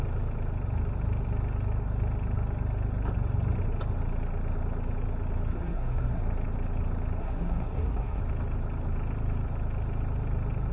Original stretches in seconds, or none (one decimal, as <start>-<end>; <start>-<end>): 0.0-5.5; 6.2-7.2; 8.2-10.7